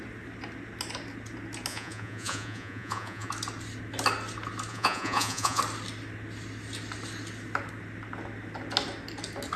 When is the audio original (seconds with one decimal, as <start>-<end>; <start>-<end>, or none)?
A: 0.0-1.7; 3.3-4.7; 5.6-9.6